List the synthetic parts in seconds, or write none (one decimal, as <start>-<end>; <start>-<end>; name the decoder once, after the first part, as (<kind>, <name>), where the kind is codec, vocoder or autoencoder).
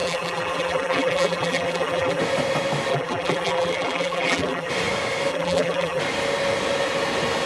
0.0-2.2 (vocoder, BigVGAN v2); 2.9-4.7; 5.3-6.0